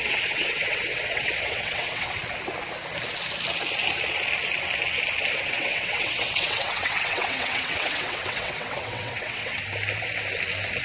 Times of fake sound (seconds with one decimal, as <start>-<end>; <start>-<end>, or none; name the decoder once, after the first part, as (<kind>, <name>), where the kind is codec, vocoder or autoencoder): 0.0-2.2 (vocoder, WaveNeXt); 5.4-9.6

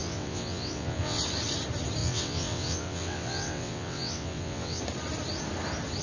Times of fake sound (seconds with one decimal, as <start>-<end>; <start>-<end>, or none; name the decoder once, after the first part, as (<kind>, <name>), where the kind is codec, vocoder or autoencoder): 0.0-1.2 (vocoder, WaveNeXt); 2.0-4.8

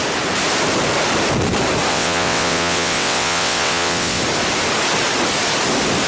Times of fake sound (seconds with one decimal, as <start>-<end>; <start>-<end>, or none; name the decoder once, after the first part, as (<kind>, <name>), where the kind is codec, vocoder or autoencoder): 1.9-4.2 (vocoder, WaveNeXt)

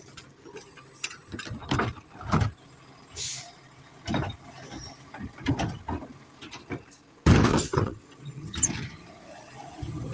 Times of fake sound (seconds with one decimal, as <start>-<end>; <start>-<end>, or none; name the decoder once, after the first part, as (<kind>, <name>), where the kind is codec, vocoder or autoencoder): 7.5-8.4 (vocoder, WaveNeXt)

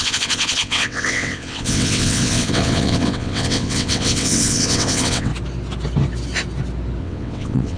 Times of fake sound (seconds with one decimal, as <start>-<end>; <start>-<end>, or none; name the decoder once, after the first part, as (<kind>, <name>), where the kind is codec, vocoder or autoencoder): 0.0-5.3 (vocoder, WaveNeXt); 7.0-7.8

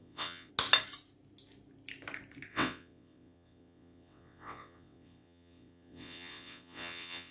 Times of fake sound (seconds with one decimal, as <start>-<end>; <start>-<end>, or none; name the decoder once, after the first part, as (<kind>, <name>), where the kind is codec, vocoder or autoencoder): 0.0-0.5 (vocoder, WaveNeXt); 2.5-7.3